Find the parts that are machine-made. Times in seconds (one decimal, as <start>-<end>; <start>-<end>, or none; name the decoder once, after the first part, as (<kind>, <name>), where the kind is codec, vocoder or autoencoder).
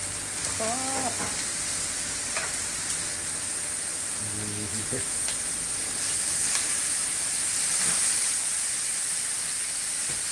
none